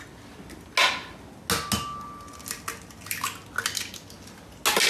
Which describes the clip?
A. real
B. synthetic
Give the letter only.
A